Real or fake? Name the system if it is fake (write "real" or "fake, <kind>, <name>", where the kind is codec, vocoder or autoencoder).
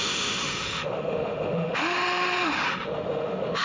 fake, autoencoder, DAC-VAE